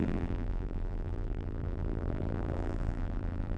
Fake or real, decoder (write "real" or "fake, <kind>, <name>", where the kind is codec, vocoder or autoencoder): fake, vocoder, BigVGAN v2